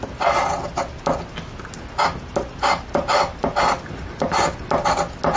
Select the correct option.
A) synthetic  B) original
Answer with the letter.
B